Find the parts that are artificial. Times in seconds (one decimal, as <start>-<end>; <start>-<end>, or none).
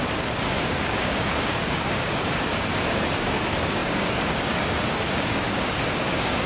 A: 0.0-6.5